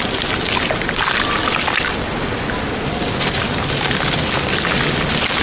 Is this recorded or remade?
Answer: recorded